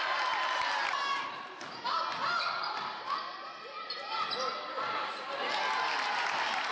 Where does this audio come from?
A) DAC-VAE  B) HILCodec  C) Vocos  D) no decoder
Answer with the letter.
D